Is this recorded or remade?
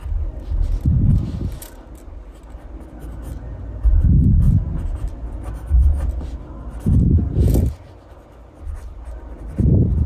recorded